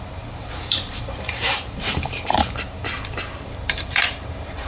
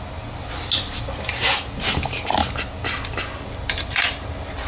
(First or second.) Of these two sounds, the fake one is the first